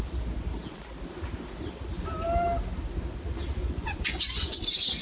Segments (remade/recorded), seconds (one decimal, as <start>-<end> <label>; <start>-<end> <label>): 0.0-3.6 recorded; 3.6-4.6 remade; 4.6-5.0 recorded